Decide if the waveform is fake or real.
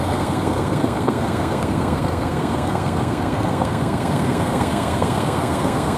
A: fake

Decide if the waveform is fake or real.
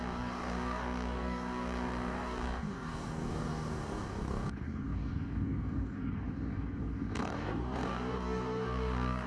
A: fake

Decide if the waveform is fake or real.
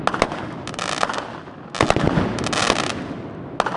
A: real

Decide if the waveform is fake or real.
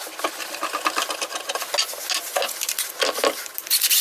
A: real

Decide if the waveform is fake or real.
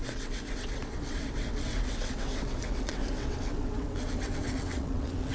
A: fake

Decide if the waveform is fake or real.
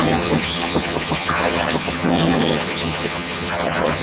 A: fake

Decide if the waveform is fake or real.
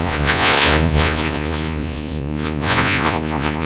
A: fake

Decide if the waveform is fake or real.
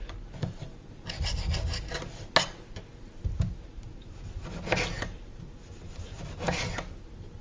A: real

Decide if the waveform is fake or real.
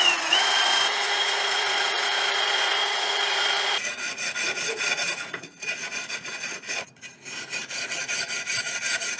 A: fake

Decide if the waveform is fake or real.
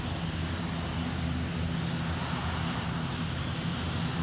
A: real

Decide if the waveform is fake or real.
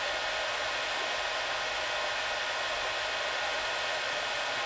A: real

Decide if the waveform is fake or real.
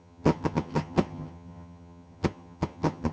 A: fake